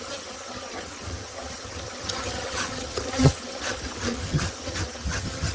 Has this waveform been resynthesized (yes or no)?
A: yes